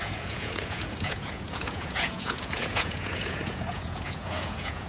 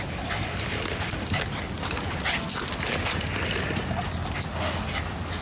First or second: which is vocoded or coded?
first